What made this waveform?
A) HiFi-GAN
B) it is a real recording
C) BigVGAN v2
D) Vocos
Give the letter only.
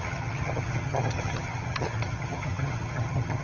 A